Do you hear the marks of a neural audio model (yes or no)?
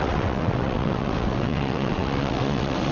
yes